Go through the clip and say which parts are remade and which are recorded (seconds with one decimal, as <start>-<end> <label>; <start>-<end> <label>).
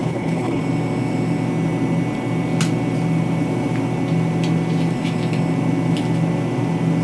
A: 0.0-0.6 remade; 0.6-7.0 recorded